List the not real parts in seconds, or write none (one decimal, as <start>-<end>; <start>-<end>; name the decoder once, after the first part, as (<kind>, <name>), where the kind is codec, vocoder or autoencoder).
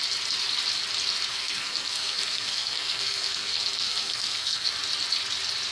1.3-4.7 (codec, SNAC)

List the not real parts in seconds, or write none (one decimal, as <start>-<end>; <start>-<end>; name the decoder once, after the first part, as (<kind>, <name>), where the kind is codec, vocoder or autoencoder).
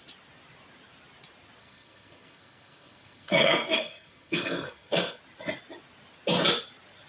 1.6-5.2 (codec, SNAC)